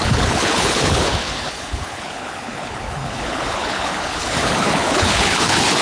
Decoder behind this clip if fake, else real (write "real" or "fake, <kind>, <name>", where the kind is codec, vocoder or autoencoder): fake, codec, HILCodec